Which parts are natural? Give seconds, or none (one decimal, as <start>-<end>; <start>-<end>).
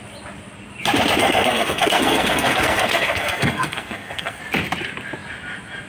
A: 0.0-1.2; 4.4-5.9